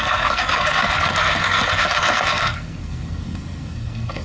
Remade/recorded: remade